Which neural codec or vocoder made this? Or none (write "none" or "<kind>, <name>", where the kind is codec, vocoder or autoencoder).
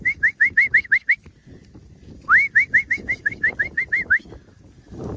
none